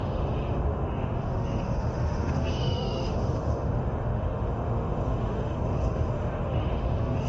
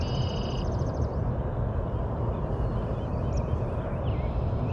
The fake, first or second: first